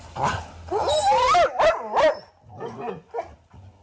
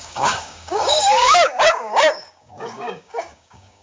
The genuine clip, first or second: first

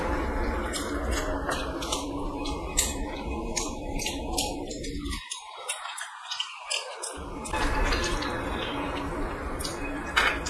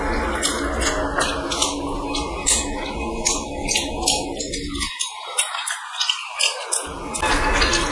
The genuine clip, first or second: second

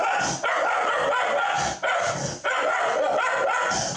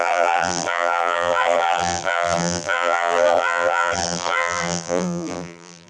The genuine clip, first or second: first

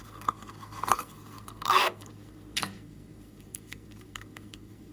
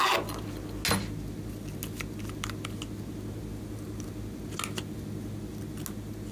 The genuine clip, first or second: second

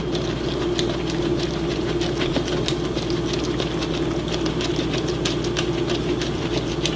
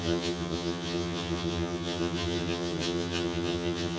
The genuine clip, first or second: first